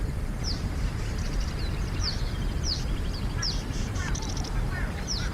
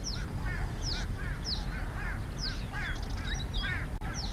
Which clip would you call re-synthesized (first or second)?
first